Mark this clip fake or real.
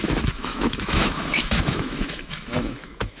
fake